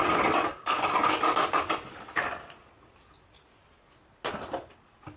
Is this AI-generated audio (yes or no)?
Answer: no